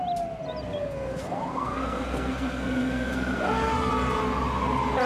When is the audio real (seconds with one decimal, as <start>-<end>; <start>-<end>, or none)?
0.0-0.8; 3.9-5.1